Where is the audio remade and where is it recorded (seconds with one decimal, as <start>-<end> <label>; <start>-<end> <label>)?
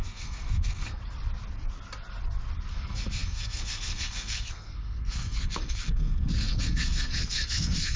0.0-1.0 remade; 1.0-2.7 recorded; 2.7-8.0 remade